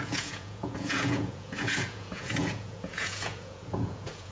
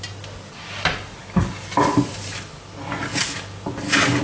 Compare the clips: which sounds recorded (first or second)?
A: second